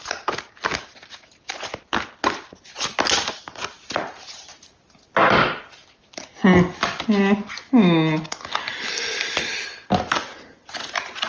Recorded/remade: recorded